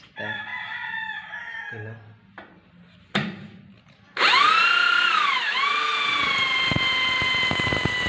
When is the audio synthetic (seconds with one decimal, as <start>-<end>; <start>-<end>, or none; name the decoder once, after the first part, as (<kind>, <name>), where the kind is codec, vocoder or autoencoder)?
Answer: 0.0-0.5 (vocoder, BigVGAN v2); 4.8-5.9